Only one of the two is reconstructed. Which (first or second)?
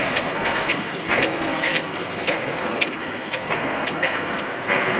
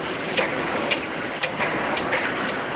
first